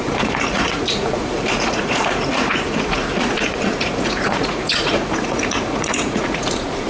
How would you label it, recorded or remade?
remade